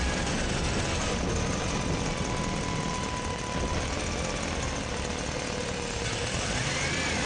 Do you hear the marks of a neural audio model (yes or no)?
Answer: no